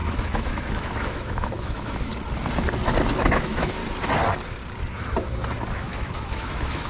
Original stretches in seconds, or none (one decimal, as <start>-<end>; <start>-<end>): 2.1-3.2; 3.8-5.7